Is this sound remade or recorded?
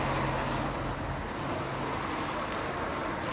recorded